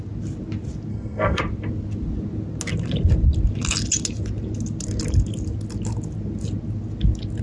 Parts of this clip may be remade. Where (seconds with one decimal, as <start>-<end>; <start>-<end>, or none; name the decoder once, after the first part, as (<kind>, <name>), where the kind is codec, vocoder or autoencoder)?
0.9-1.4 (codec, SNAC)